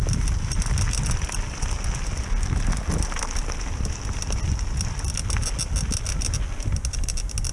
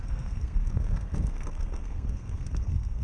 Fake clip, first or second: second